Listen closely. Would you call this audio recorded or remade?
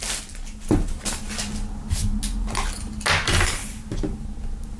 recorded